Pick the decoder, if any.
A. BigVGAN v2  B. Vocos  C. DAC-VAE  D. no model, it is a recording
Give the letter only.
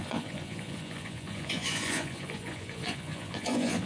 B